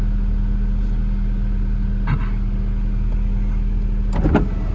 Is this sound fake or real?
real